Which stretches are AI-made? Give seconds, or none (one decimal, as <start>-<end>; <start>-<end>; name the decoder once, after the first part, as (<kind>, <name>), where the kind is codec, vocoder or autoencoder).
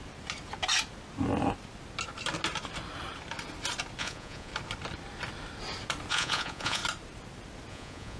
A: 4.0-4.5 (vocoder, Vocos); 6.1-6.8; 7.7-8.2